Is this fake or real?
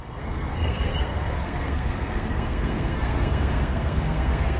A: fake